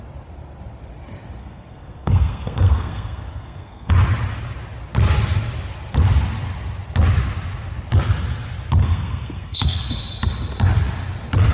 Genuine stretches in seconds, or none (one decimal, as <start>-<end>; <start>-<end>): 0.0-1.4; 3.9-8.8; 9.9-11.5